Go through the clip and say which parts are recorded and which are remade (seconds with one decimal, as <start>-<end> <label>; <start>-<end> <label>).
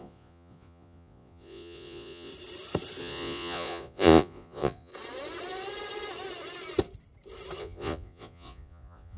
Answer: 0.0-2.3 remade; 2.3-3.0 recorded; 3.0-4.9 remade; 4.9-7.6 recorded; 7.6-9.2 remade